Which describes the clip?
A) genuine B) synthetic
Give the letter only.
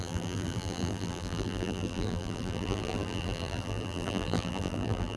B